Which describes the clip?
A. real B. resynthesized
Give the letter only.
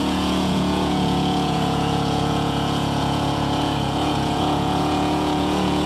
B